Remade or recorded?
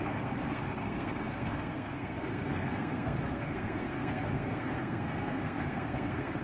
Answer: remade